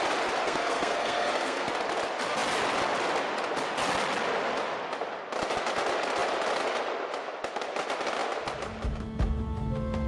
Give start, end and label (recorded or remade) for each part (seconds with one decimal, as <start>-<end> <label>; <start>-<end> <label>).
0.0-0.4 recorded; 0.4-1.7 remade; 1.7-10.1 recorded